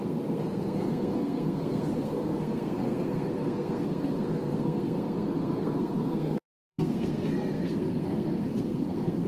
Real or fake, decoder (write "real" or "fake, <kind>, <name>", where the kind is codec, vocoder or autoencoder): fake, codec, SNAC